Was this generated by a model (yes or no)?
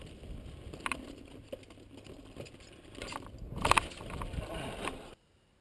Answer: no